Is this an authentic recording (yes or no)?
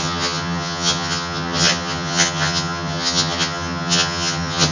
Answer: no